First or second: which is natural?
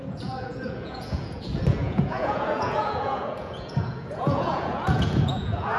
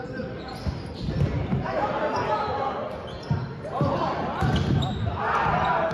second